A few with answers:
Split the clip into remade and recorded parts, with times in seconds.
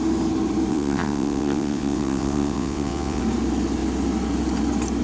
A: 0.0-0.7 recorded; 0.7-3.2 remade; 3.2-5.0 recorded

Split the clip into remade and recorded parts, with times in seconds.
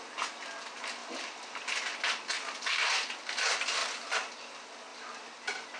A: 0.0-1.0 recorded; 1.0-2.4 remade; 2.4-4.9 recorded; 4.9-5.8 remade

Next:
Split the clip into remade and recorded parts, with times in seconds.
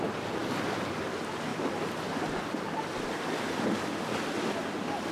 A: 0.0-0.4 recorded; 0.4-1.0 remade; 1.0-1.5 recorded; 1.5-4.6 remade; 4.6-5.1 recorded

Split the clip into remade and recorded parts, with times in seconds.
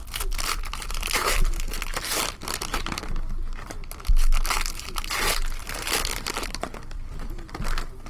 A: 0.0-3.0 remade; 3.0-5.6 recorded; 5.6-7.5 remade; 7.5-8.1 recorded